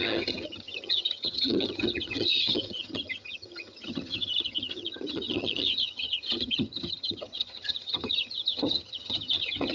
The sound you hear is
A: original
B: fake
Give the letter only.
B